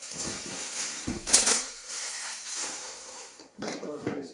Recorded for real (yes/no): no